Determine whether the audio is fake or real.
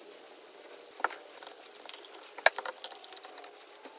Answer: real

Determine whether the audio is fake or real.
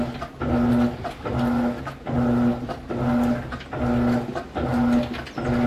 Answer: real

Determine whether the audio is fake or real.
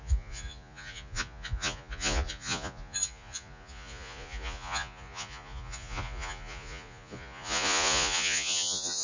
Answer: fake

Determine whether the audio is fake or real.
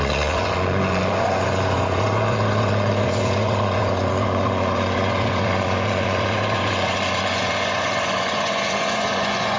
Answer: fake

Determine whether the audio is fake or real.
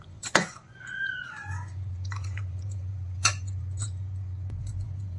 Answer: fake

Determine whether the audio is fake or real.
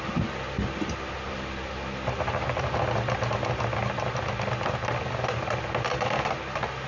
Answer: real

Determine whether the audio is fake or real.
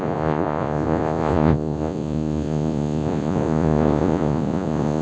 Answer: fake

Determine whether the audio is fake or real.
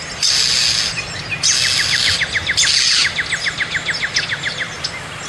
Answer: real